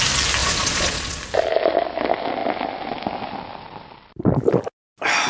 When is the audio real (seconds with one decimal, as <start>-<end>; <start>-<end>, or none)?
0.0-0.4; 1.2-5.3